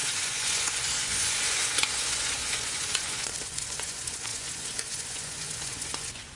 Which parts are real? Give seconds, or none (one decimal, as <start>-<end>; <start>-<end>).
none